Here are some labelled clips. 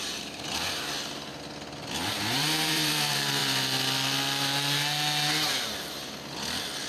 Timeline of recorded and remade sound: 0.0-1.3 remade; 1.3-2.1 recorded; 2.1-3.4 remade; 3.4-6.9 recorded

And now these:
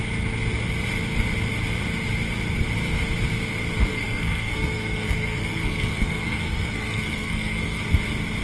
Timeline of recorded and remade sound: 0.0-3.9 recorded; 3.9-7.8 remade; 7.8-8.4 recorded

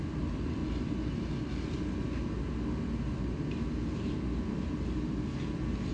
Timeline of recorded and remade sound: 0.0-5.9 recorded